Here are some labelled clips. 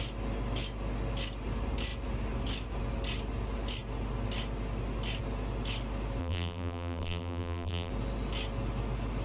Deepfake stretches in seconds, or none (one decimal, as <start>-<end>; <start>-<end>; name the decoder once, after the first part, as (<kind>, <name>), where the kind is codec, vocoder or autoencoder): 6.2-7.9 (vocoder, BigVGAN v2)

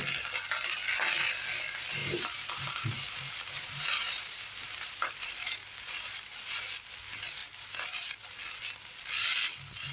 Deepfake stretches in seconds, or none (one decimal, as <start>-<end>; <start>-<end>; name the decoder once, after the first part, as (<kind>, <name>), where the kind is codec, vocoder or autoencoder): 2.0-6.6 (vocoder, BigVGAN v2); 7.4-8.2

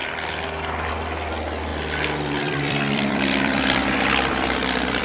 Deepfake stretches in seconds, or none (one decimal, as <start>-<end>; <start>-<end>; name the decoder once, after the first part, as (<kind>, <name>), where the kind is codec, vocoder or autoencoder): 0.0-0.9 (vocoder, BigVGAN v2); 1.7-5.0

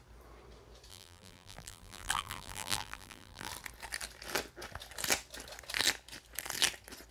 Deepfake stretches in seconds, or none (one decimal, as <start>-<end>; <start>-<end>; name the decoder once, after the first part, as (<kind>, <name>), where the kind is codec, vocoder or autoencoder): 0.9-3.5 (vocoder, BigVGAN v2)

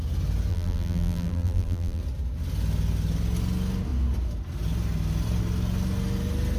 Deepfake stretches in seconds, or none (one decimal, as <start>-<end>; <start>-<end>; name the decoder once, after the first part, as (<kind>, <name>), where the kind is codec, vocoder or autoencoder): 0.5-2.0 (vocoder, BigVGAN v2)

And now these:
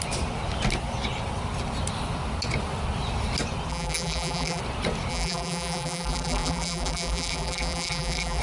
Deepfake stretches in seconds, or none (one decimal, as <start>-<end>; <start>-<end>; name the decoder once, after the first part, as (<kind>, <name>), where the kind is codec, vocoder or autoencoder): 3.7-4.6 (vocoder, BigVGAN v2); 5.1-8.4

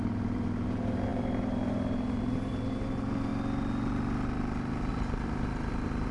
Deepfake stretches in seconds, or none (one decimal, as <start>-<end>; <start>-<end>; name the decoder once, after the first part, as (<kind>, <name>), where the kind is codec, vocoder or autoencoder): 0.0-3.3 (vocoder, BigVGAN v2); 4.9-6.1

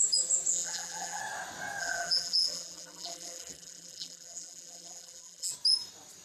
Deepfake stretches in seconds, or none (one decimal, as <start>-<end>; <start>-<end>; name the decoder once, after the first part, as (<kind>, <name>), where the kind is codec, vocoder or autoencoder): 0.5-1.2 (vocoder, BigVGAN v2); 1.8-5.5